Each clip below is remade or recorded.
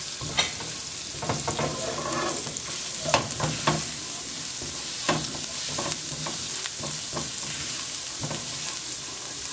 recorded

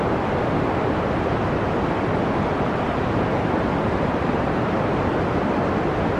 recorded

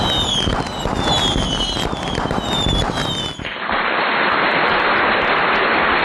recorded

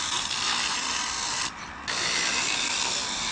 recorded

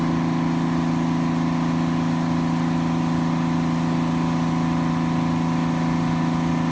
recorded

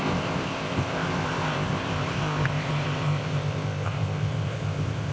remade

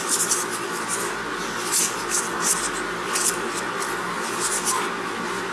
recorded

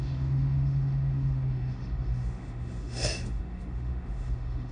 remade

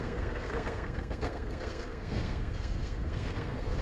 remade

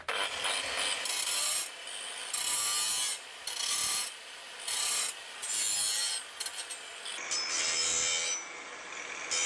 recorded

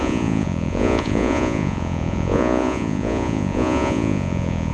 remade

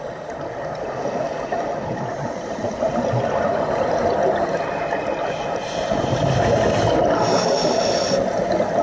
recorded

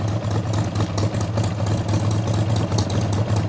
recorded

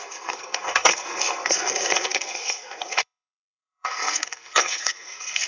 remade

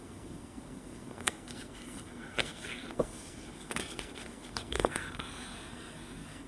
remade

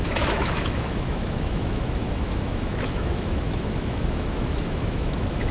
remade